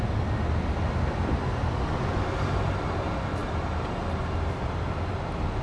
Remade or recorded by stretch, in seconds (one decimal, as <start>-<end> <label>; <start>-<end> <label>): 0.0-5.6 recorded